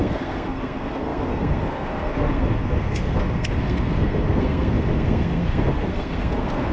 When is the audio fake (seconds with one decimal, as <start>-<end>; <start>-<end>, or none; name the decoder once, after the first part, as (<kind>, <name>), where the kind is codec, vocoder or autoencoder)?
0.0-6.7 (codec, SNAC)